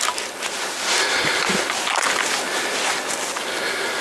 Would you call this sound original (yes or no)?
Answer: yes